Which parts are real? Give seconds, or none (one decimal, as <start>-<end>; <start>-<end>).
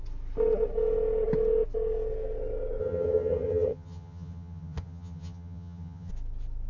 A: 0.0-2.8; 6.1-6.7